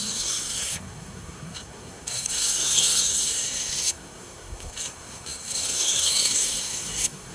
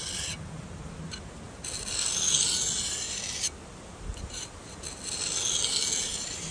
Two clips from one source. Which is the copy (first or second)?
first